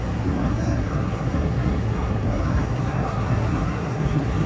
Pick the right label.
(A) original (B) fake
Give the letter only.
B